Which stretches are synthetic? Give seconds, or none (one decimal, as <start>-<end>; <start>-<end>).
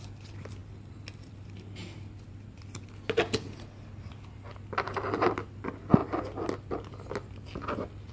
none